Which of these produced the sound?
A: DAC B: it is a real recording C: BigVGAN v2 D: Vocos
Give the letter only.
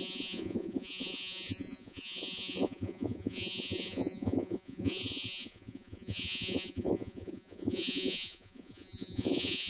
D